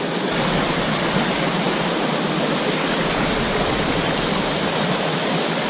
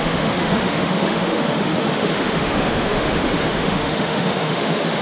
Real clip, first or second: first